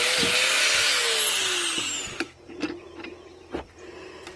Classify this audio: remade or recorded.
recorded